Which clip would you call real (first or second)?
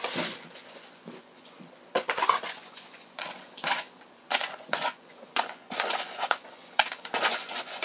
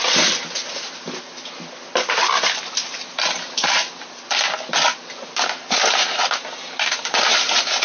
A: second